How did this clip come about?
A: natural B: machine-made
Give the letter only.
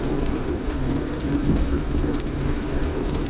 B